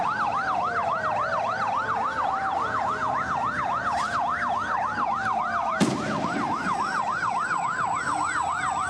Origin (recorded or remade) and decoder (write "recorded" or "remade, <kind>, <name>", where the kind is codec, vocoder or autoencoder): recorded